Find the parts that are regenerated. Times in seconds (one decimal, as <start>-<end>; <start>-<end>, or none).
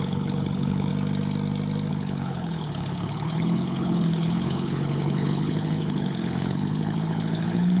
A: 0.0-0.9; 1.9-7.8